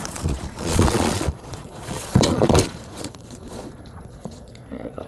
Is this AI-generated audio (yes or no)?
yes